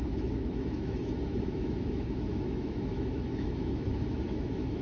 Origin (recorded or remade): remade